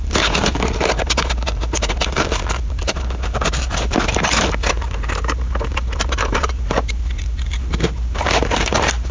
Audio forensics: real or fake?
fake